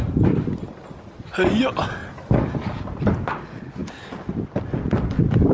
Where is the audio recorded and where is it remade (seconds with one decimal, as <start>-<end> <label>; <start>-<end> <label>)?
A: 0.0-5.5 recorded